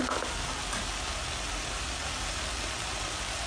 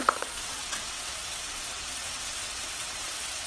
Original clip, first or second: first